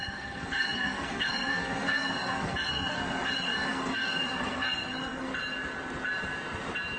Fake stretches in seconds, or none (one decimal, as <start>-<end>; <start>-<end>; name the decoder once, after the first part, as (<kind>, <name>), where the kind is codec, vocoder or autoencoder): 0.0-5.3 (codec, SNAC)